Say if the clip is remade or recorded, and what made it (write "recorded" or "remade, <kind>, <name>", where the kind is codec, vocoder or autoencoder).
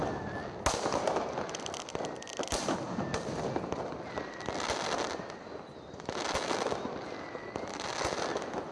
recorded